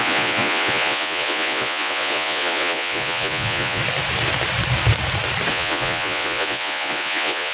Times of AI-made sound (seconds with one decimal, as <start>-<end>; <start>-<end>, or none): 0.0-3.8; 5.5-7.5